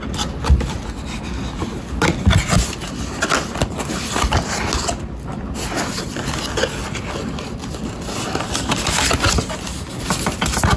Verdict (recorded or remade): recorded